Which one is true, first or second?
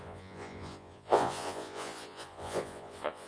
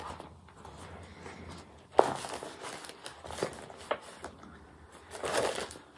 second